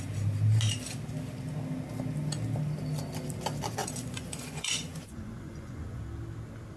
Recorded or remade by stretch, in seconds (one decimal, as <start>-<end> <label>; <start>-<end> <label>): 0.0-3.8 recorded; 3.8-6.0 remade; 6.0-6.8 recorded